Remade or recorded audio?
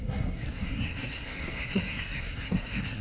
remade